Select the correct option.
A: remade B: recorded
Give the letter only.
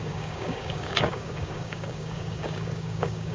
A